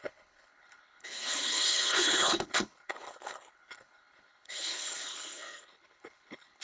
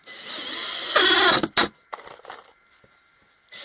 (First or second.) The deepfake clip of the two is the first